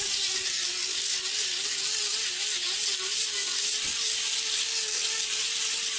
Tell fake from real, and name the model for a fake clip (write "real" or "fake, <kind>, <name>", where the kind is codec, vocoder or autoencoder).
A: real